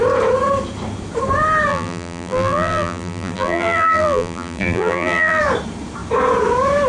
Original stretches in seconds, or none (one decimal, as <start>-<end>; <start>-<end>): 0.0-1.7; 5.4-6.9